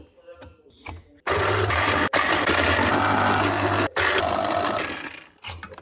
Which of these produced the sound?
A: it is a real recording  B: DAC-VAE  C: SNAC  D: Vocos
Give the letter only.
A